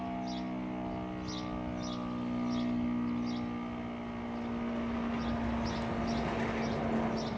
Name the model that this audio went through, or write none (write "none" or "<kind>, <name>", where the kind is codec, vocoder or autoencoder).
none